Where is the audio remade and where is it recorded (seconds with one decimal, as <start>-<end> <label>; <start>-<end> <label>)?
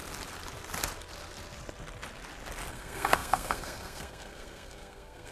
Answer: 0.0-2.7 recorded; 2.7-5.3 remade